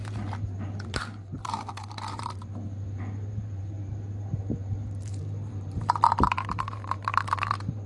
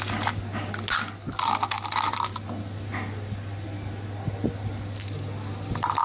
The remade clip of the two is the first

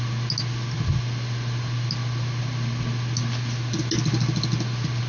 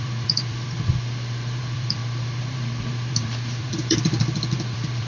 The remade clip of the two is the second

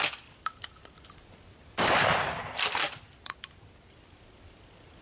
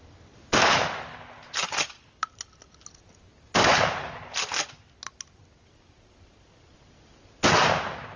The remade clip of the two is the first